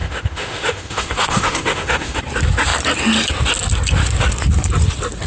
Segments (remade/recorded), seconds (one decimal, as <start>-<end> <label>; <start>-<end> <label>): 0.0-2.2 remade; 2.2-5.3 recorded